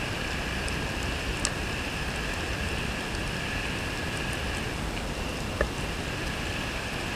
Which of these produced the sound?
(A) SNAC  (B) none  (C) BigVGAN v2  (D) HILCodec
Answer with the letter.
B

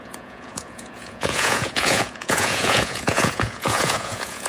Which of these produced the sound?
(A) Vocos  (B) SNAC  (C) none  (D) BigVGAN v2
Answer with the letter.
A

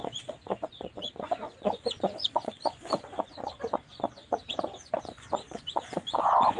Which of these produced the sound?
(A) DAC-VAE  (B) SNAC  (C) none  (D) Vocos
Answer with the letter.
D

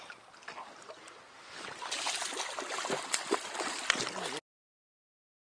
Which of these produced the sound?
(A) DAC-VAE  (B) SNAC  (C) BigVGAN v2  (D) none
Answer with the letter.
D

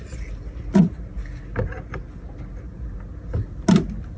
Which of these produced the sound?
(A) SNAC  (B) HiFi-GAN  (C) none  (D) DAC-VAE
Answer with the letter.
C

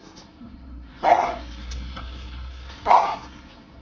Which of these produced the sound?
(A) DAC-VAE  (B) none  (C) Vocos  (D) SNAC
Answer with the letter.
D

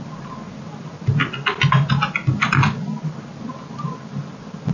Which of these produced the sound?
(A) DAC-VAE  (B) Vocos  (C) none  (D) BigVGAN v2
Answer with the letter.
C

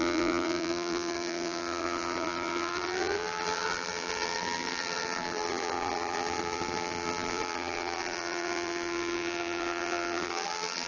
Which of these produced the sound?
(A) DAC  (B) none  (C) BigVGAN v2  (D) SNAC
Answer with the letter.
C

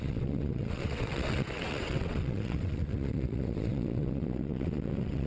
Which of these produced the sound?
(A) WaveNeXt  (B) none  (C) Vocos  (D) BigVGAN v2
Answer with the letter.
A